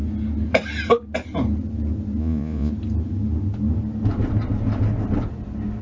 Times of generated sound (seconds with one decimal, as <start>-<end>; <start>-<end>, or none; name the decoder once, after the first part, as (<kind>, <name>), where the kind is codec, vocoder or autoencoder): 2.2-2.7 (vocoder, Vocos)